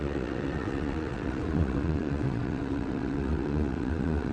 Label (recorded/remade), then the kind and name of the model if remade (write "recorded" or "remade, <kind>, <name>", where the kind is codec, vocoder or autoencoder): remade, vocoder, WaveNeXt